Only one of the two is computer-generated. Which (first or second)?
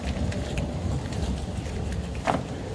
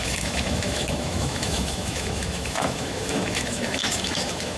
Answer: second